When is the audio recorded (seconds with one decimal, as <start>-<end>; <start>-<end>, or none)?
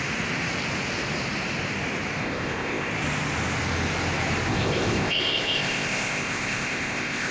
0.0-2.2; 2.9-4.5